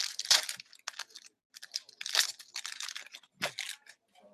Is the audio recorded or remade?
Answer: recorded